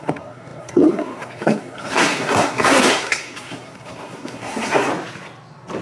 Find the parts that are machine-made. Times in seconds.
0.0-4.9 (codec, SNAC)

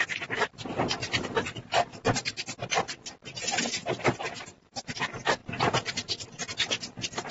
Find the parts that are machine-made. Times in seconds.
1.9-2.6 (vocoder, BigVGAN v2); 3.8-4.9

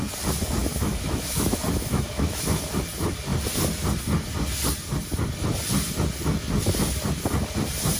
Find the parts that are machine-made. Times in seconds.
0.6-2.6 (autoencoder, DAC-VAE)

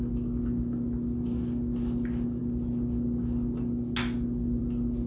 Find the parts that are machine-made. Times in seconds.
none

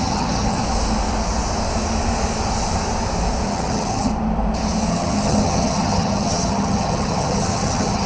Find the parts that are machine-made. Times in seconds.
0.0-0.6 (vocoder, HiFi-GAN); 3.5-4.1; 4.9-8.1

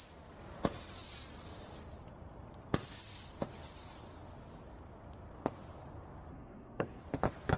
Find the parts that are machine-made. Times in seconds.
6.3-7.0 (codec, SNAC)

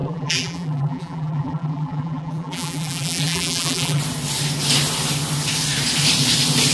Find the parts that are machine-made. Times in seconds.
0.0-4.0 (vocoder, BigVGAN v2)